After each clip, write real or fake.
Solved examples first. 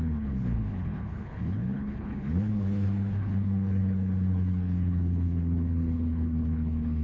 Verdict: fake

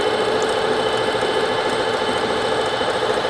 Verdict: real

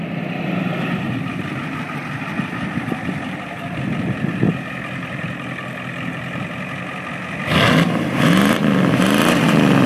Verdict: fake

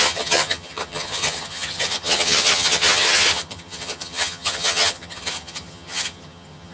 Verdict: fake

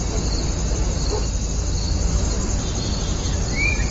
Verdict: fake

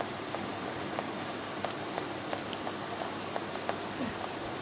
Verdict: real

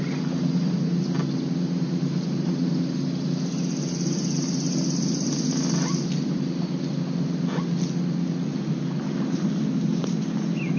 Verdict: real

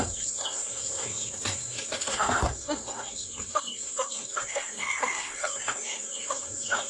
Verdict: fake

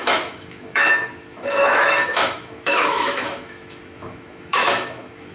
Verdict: fake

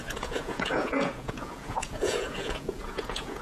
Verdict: fake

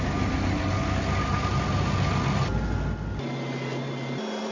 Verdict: real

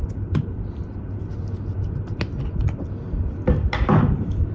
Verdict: fake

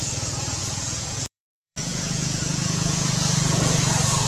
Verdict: fake